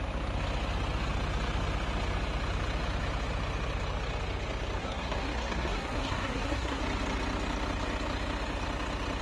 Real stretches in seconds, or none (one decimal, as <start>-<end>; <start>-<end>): 0.0-4.8; 6.8-9.2